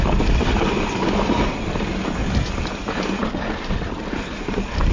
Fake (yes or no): no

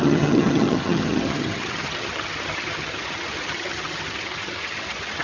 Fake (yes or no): yes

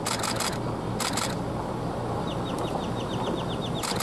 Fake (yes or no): no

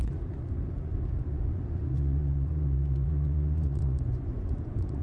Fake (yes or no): yes